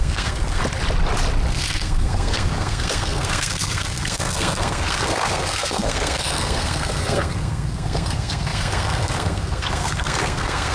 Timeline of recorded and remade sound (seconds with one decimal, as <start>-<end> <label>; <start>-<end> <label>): 0.0-0.6 remade; 0.6-1.5 recorded; 1.5-10.7 remade